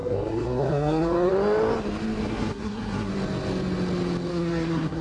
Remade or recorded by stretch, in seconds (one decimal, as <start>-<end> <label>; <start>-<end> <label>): 0.0-1.3 remade; 1.3-2.2 recorded; 2.2-3.1 remade; 3.1-4.3 recorded; 4.3-5.0 remade